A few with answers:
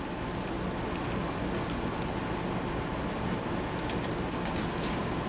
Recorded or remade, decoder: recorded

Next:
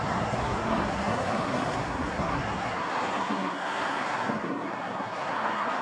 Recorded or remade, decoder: remade, codec, SNAC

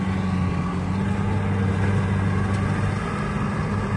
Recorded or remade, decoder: recorded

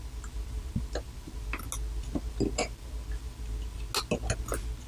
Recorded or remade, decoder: recorded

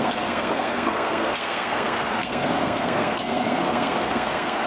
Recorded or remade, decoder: remade, codec, SNAC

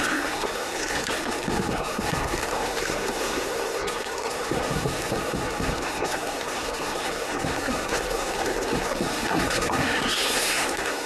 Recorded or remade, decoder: remade, codec, SNAC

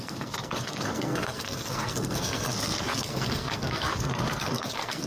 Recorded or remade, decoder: remade, codec, SNAC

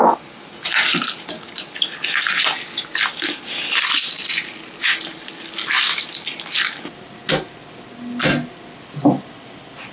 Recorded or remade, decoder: recorded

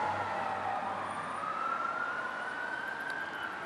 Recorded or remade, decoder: recorded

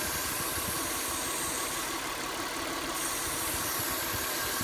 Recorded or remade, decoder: recorded